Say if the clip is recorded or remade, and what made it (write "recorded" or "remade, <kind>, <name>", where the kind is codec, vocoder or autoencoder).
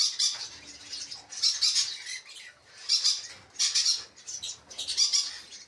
recorded